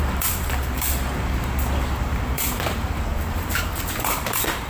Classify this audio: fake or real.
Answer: fake